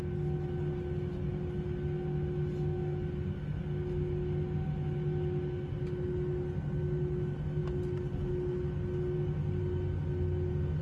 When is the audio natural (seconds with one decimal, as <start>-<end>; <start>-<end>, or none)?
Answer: 0.0-10.8